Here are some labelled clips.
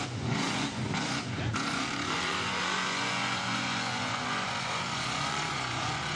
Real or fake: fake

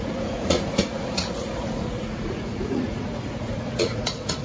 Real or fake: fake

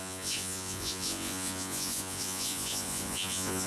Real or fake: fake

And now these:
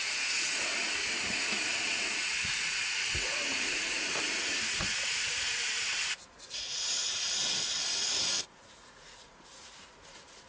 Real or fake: fake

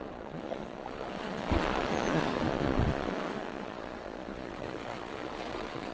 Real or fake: fake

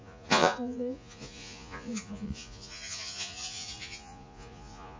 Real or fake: fake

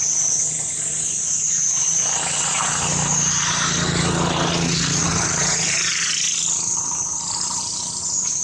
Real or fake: real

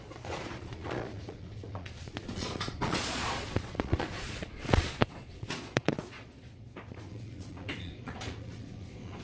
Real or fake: fake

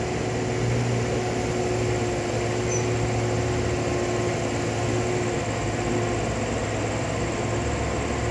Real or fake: real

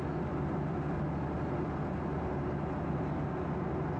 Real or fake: real